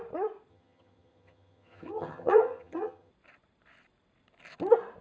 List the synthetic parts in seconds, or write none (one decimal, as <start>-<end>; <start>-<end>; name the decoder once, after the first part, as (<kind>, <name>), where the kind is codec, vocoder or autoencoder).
0.5-3.1 (vocoder, HiFi-GAN)